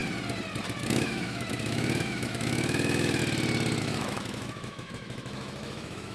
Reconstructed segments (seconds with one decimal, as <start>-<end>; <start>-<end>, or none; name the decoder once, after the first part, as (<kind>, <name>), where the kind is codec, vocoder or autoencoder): 0.8-3.2 (autoencoder, DAC-VAE); 3.8-6.1